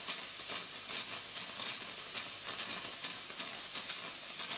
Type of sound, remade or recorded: recorded